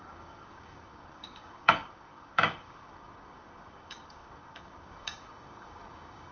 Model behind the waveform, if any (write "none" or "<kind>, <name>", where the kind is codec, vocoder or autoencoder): codec, DAC